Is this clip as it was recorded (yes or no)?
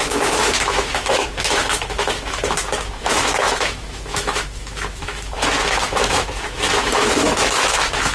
no